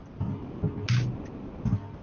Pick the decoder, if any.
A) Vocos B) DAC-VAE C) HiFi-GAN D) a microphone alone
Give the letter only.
D